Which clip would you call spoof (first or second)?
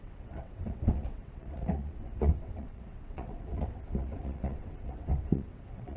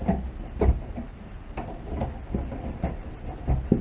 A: first